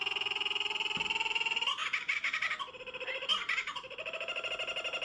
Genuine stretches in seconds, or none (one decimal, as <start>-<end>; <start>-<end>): 0.0-1.8; 2.5-3.3; 4.5-5.0